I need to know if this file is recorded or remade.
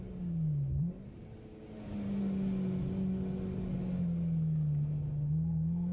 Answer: recorded